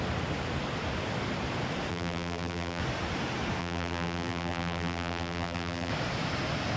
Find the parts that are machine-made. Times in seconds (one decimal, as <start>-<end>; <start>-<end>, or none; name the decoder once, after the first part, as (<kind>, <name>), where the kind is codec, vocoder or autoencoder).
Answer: 1.9-2.8 (vocoder, BigVGAN v2); 3.6-5.9